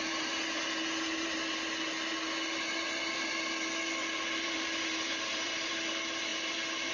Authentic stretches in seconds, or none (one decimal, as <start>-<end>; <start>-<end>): 0.0-4.0; 5.7-6.9